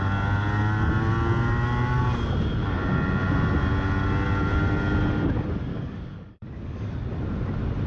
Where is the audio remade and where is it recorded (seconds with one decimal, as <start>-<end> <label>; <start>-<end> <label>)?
0.0-5.7 recorded; 5.7-6.9 remade; 6.9-7.9 recorded